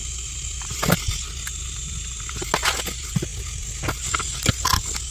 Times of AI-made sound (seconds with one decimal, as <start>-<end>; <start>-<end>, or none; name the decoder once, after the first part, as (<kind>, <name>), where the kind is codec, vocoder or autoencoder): none